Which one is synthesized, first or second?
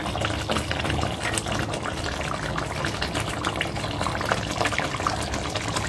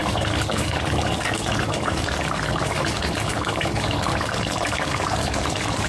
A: second